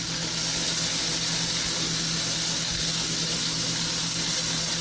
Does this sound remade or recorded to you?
recorded